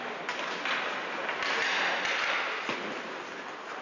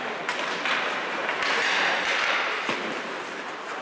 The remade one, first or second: second